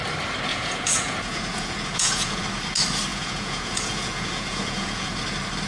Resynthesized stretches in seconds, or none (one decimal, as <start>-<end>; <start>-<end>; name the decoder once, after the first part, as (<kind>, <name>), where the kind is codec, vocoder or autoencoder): 0.5-2.4 (vocoder, Vocos); 3.1-5.2